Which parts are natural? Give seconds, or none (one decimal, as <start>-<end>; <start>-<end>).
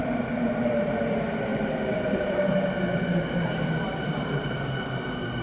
0.9-1.5; 4.7-5.4